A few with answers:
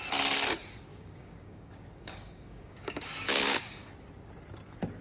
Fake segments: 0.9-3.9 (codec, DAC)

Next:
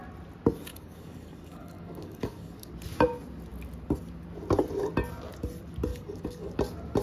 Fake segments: 0.7-2.7 (codec, DAC); 5.9-6.5

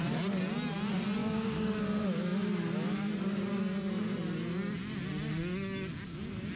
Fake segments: 1.2-1.8 (codec, DAC)

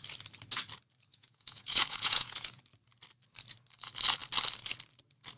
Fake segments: 1.1-2.6 (vocoder, Vocos)

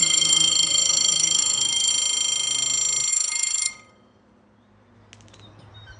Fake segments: 0.0-1.9 (codec, SNAC); 3.1-3.7